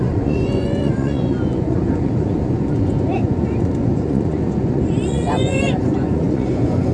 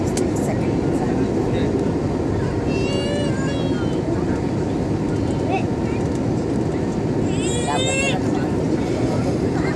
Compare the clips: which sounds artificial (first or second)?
first